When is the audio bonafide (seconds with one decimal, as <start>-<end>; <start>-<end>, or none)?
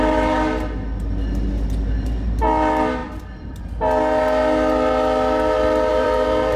0.0-3.0; 3.6-5.9